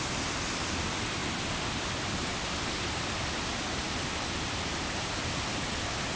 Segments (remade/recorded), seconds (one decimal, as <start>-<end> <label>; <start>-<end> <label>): 0.0-6.2 recorded